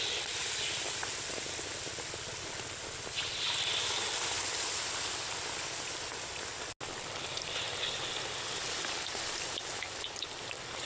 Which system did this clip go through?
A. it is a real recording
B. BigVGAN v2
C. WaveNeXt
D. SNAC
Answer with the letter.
A